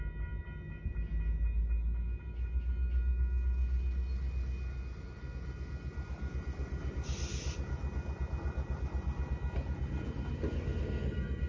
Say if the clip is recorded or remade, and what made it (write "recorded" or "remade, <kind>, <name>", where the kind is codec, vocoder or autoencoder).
recorded